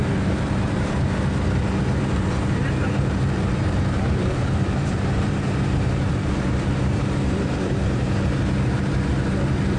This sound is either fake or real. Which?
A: fake